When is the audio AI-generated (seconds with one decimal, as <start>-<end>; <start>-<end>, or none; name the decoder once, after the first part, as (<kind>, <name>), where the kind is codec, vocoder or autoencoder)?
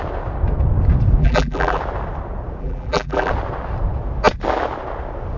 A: 1.2-1.8 (vocoder, BigVGAN v2); 2.6-3.3